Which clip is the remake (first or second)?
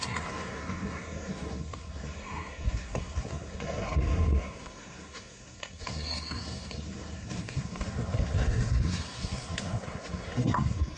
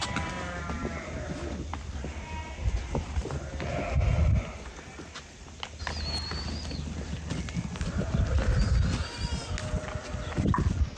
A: first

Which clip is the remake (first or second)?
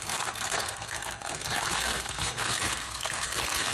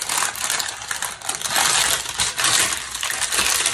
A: first